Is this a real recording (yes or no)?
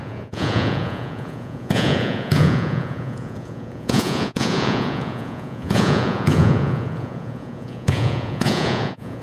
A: no